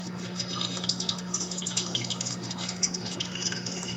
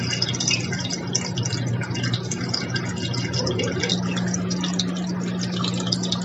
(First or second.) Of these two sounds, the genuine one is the second